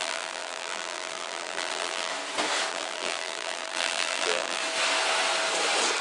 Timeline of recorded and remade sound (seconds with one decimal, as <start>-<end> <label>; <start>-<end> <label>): 0.0-2.1 remade; 2.1-2.7 recorded; 2.7-4.6 remade; 4.6-6.0 recorded